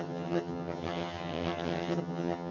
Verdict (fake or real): fake